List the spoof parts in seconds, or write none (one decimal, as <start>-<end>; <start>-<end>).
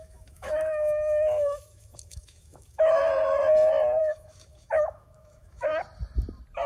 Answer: 0.0-3.0; 4.0-5.7